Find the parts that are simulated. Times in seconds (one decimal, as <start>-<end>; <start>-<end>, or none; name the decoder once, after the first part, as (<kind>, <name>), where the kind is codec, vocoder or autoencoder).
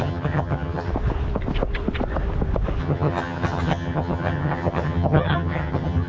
0.0-0.9 (vocoder, HiFi-GAN); 2.8-6.1